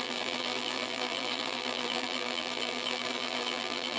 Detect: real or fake fake